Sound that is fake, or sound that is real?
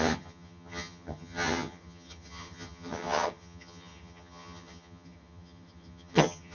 fake